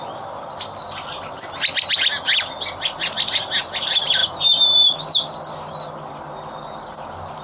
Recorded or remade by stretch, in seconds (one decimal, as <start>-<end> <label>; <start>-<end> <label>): 0.0-7.4 recorded